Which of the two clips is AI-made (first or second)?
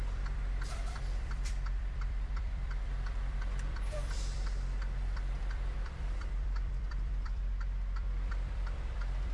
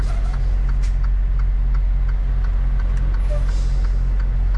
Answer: first